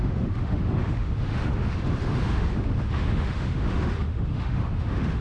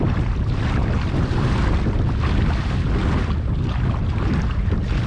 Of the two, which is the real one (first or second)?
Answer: second